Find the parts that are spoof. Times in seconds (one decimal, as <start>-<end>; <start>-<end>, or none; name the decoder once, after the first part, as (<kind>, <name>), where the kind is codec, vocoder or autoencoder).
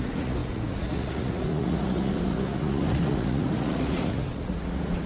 0.0-5.1 (vocoder, Vocos)